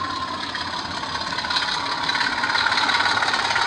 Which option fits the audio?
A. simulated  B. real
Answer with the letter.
A